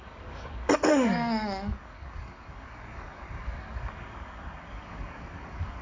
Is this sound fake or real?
fake